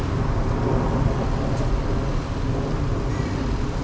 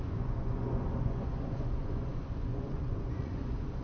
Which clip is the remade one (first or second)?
second